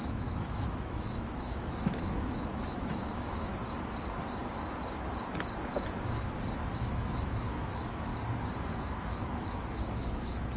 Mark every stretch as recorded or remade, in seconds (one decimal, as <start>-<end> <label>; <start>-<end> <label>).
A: 0.0-3.5 remade; 3.5-6.7 recorded; 6.7-8.1 remade; 8.1-8.8 recorded; 8.8-10.6 remade